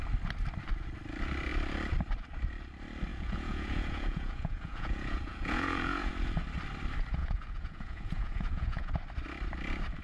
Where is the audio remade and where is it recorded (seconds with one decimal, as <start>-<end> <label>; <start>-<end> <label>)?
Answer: 0.0-3.1 recorded; 3.1-6.1 remade; 6.1-7.2 recorded; 7.2-8.9 remade; 8.9-10.0 recorded